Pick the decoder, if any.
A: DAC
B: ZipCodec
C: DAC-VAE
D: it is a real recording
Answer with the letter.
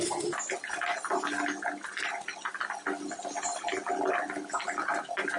D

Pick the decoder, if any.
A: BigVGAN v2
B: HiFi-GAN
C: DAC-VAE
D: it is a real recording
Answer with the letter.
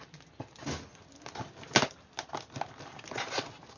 D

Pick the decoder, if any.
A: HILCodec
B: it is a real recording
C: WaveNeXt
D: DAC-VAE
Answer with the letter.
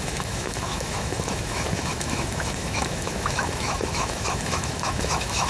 D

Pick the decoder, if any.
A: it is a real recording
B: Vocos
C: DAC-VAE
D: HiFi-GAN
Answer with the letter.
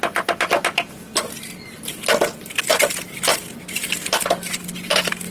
A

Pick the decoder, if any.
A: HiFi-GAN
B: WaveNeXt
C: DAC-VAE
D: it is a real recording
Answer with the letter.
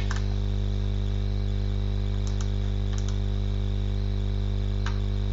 D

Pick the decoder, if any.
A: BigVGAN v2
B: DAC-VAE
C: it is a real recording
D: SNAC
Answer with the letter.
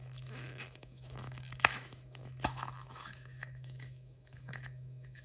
B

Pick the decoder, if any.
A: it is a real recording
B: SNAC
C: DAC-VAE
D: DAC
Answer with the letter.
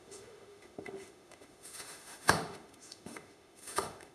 C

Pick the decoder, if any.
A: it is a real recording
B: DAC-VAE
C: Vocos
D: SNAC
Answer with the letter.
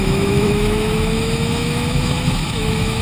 B